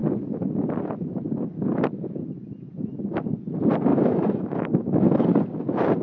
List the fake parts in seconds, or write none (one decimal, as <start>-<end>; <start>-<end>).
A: 3.9-5.3